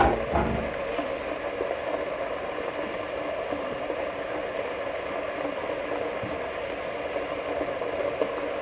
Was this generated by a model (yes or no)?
no